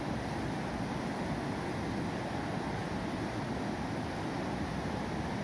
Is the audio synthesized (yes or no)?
no